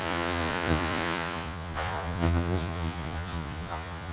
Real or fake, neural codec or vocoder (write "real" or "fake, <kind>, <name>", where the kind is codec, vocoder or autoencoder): fake, vocoder, Vocos